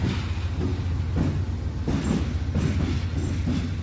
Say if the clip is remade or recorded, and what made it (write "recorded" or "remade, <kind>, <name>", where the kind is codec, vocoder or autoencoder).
recorded